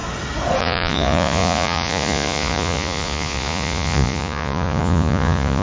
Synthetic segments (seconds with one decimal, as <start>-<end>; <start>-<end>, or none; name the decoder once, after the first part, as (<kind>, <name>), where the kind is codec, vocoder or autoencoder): 0.6-5.6 (vocoder, Vocos)